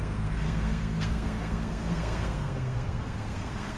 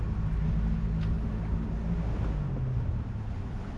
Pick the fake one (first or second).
first